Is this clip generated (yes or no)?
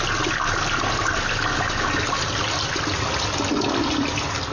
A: no